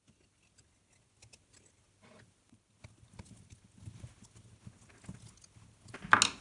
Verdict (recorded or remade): recorded